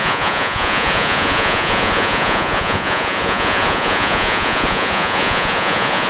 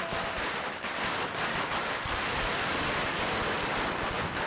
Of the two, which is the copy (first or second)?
first